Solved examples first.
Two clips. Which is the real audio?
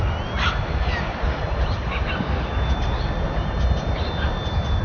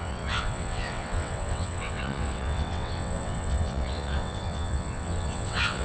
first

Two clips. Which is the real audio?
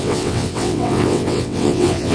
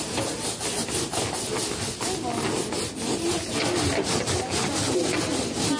second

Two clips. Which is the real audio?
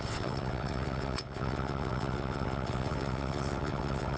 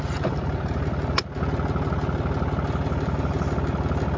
second